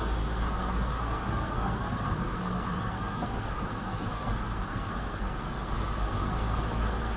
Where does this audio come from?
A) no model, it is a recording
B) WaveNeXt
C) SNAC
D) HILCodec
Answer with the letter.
C